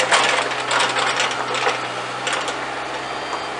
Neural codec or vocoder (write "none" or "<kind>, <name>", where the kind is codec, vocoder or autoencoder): none